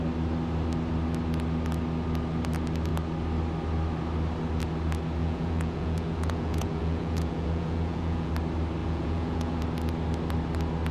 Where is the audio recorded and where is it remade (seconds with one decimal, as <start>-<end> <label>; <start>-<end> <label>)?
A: 0.0-5.2 recorded; 5.2-8.3 remade; 8.3-8.8 recorded; 8.8-9.6 remade; 9.6-10.9 recorded